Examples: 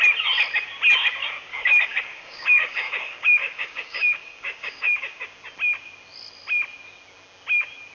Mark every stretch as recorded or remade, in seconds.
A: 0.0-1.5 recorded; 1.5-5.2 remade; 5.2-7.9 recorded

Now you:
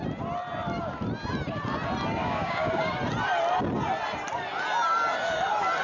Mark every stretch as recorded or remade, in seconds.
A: 0.0-2.2 recorded; 2.2-2.9 remade; 2.9-5.8 recorded

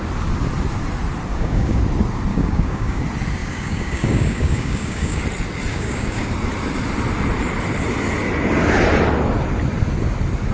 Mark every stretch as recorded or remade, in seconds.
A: 0.0-1.3 recorded; 1.3-1.8 remade; 1.8-2.3 recorded; 2.3-3.0 remade; 3.0-3.4 recorded; 3.4-5.2 remade; 5.2-5.7 recorded; 5.7-6.3 remade; 6.3-10.5 recorded